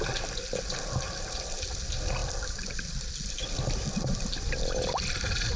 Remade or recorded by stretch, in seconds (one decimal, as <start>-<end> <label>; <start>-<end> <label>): 0.0-5.6 recorded